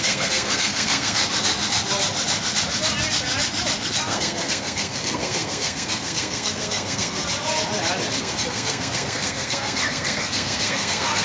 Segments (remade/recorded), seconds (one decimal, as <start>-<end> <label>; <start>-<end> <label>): 0.0-1.2 remade; 1.2-3.8 recorded; 3.8-7.2 remade; 7.2-8.2 recorded; 8.2-11.2 remade